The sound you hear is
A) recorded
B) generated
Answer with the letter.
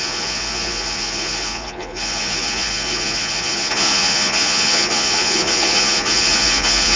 B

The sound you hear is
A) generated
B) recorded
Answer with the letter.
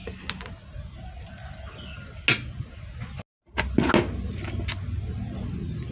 B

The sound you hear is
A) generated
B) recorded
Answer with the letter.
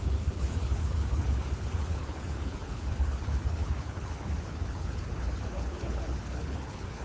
A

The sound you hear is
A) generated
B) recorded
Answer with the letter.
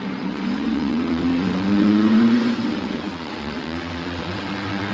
A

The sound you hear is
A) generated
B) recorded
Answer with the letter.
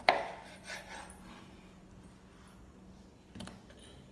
B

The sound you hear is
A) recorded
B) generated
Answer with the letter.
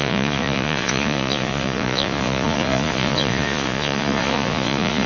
B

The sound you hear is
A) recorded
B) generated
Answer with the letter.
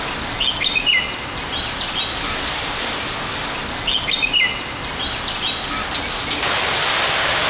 A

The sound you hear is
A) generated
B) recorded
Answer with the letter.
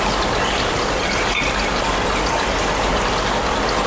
B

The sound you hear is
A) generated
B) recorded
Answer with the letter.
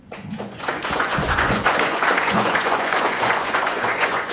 A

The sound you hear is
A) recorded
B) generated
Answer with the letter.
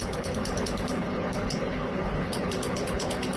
B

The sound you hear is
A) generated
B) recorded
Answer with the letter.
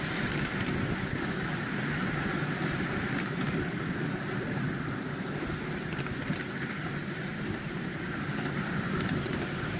B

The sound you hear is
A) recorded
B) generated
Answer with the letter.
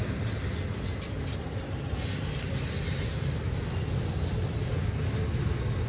A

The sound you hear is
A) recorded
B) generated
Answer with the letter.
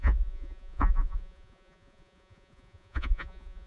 B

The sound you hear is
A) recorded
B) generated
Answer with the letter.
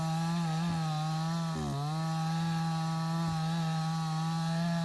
A